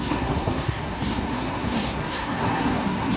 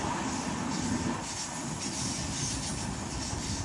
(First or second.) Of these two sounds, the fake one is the first